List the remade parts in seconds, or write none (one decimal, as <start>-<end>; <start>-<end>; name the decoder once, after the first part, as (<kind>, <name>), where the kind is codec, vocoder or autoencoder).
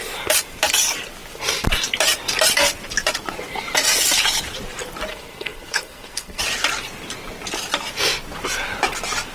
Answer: 5.1-6.4 (codec, SNAC)